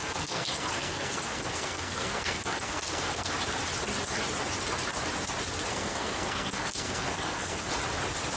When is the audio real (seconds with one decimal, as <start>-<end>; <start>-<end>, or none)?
3.3-5.7; 7.7-8.4